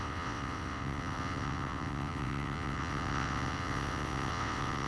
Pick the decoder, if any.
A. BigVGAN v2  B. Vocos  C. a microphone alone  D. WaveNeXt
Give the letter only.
D